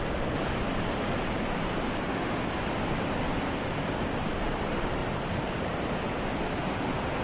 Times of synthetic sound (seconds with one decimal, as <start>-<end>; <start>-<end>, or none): 5.0-5.9